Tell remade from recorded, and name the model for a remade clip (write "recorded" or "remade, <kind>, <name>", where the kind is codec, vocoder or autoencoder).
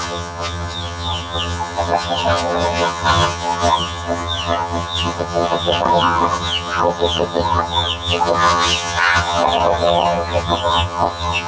remade, vocoder, HiFi-GAN